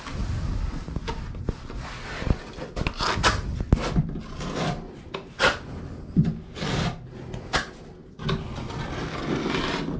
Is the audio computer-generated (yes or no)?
no